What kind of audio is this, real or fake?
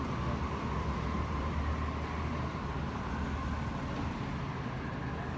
real